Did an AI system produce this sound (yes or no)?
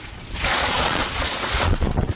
yes